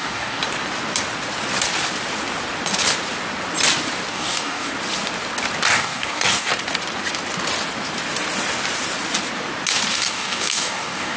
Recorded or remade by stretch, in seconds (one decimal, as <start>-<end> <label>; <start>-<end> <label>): 0.0-0.4 remade; 0.4-4.1 recorded; 4.1-4.7 remade; 4.7-5.7 recorded; 5.7-6.5 remade; 6.5-9.9 recorded; 9.9-11.2 remade